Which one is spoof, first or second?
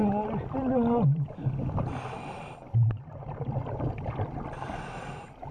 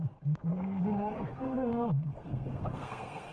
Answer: second